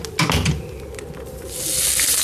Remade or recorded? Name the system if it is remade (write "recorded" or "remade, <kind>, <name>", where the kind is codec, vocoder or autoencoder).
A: recorded